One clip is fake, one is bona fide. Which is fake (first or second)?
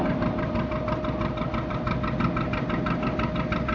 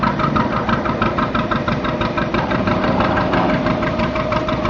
second